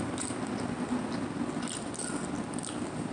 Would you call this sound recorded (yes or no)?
yes